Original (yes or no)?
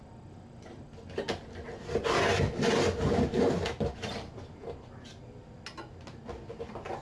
yes